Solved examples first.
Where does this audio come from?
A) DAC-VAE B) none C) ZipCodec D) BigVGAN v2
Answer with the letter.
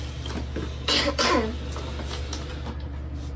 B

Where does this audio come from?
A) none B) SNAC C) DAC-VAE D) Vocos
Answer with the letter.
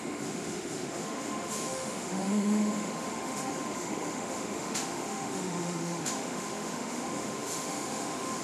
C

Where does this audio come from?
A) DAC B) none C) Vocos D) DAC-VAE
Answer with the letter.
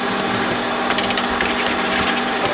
B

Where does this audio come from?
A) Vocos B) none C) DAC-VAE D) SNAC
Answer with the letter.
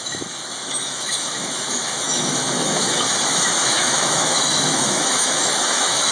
C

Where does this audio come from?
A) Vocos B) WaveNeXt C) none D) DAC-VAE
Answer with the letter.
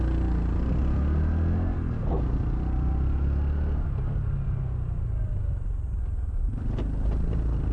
C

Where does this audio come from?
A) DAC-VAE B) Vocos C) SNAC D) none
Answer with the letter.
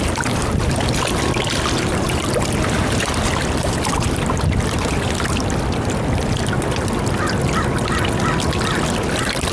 D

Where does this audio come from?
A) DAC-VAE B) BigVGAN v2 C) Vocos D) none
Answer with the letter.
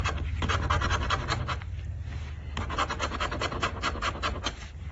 D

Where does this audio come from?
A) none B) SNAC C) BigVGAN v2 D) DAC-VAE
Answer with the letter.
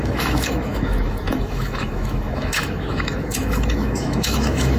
D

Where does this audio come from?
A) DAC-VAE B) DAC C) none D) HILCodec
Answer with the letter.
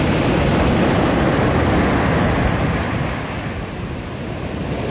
C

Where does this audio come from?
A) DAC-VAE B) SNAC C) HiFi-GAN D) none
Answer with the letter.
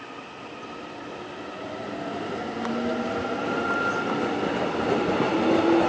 D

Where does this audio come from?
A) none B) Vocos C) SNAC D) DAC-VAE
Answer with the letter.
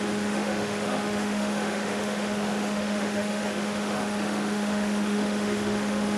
D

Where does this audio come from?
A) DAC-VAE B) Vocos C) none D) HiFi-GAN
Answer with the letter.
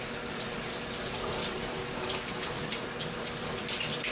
C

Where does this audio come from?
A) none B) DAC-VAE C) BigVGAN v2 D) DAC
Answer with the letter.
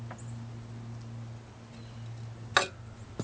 A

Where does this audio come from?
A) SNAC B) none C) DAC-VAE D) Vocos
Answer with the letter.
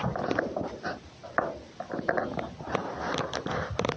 B